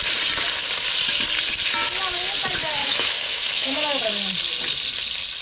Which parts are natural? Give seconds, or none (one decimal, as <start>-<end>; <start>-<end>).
0.0-2.8; 4.0-5.4